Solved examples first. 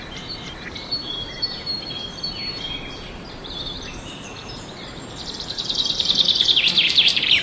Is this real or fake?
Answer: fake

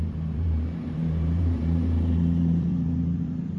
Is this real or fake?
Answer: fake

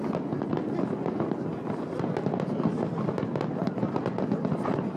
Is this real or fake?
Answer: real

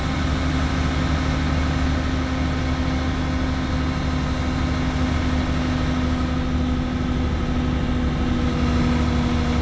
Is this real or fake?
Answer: real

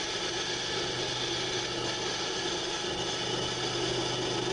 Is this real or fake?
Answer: real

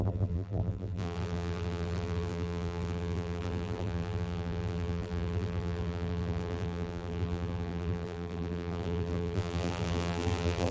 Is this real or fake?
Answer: fake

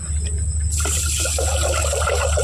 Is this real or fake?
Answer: real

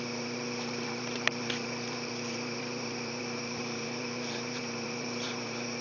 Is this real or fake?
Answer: fake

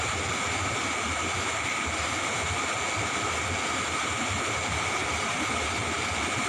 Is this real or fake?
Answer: real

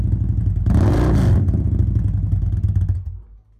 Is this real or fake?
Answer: real